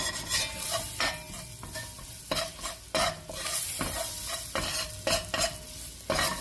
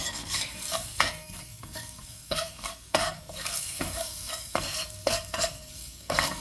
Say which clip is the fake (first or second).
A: second